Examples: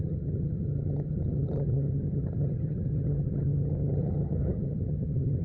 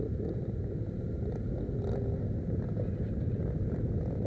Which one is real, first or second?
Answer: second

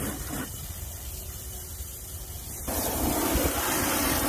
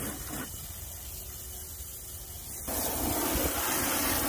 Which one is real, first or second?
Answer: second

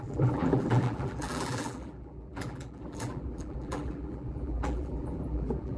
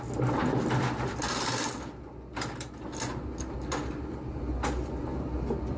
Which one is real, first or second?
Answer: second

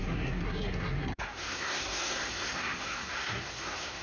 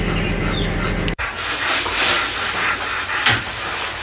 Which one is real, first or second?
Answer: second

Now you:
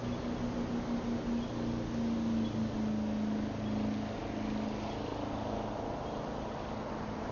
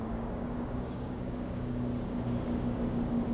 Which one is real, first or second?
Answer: first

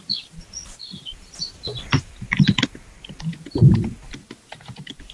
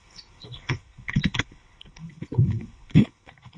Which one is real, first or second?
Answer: first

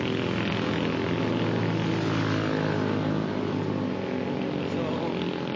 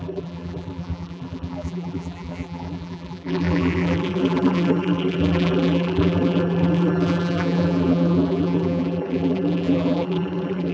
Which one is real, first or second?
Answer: first